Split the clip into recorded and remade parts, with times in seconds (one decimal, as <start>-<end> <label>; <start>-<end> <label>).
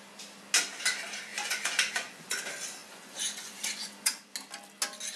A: 0.0-1.3 recorded; 1.3-2.4 remade; 2.4-2.8 recorded; 2.8-4.2 remade; 4.2-5.2 recorded